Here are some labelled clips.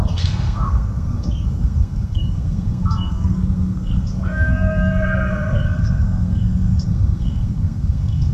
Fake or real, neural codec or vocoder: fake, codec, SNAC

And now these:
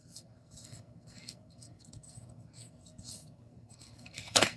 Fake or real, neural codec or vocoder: fake, codec, SNAC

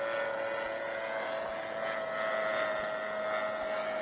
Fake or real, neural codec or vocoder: real